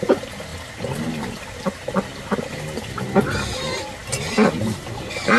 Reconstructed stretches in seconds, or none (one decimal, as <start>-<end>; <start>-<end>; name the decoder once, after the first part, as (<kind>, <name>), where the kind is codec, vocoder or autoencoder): none